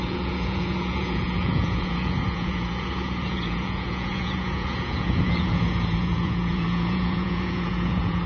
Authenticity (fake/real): fake